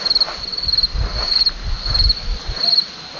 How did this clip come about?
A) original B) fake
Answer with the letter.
A